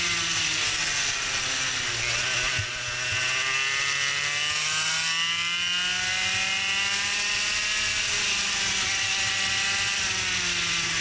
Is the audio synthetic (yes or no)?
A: no